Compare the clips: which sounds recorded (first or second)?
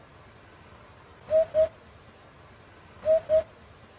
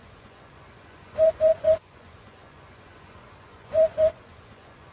first